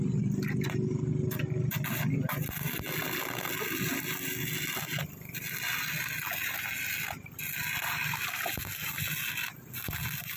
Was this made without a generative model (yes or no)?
yes